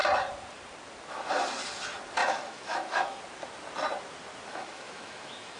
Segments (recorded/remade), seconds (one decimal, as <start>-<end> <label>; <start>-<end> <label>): 0.0-2.2 recorded; 2.2-3.2 remade; 3.2-4.5 recorded; 4.5-5.6 remade